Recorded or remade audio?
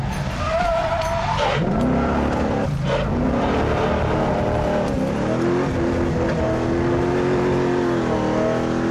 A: recorded